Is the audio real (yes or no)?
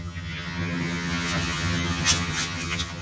no